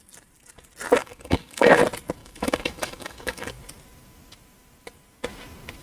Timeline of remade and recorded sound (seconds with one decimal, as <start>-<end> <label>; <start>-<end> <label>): 0.0-1.0 recorded; 1.0-1.8 remade; 1.8-2.2 recorded; 2.2-3.5 remade; 3.5-5.8 recorded